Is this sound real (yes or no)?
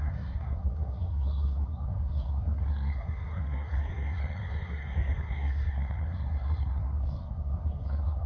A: no